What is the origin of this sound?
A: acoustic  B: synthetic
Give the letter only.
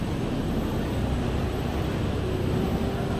A